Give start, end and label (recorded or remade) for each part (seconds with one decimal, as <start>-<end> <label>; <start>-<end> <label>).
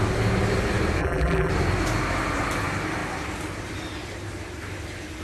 0.0-1.0 recorded; 1.0-1.5 remade; 1.5-5.2 recorded